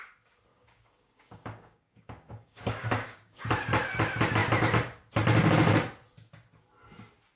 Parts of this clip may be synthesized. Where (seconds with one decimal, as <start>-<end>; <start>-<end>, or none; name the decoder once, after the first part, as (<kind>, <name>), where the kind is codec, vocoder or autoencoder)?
0.5-3.4 (codec, DAC)